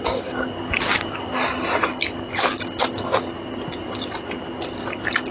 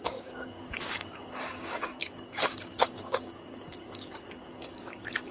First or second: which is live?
first